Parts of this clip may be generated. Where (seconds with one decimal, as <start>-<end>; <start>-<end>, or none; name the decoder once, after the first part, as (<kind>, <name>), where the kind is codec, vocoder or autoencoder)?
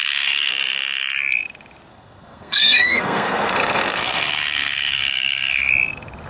0.0-0.5 (codec, SNAC); 1.9-5.7